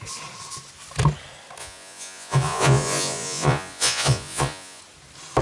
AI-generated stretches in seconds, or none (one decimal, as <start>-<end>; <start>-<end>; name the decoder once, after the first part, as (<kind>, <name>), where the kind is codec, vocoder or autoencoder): 1.6-4.8 (vocoder, Vocos)